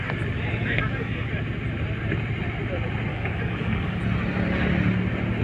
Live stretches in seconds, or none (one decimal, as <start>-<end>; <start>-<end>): 0.0-0.6; 1.3-3.1; 4.0-5.4